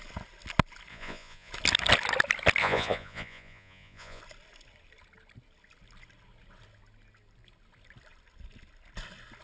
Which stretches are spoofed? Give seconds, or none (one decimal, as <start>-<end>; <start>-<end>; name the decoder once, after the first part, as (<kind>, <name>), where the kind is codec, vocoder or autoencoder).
0.9-1.5 (vocoder, Vocos); 2.6-4.2